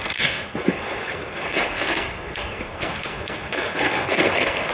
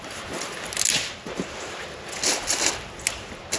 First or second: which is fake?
first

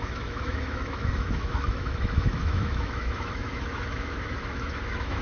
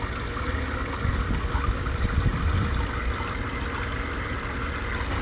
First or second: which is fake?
first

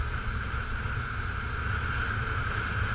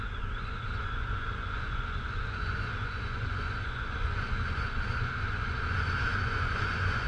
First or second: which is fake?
second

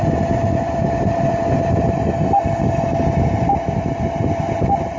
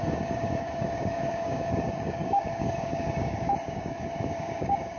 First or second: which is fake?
second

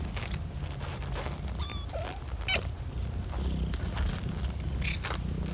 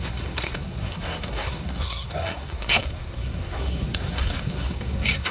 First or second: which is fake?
second